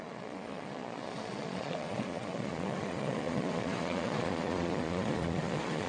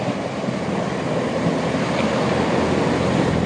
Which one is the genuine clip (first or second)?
second